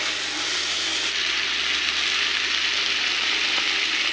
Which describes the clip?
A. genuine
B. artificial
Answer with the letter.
A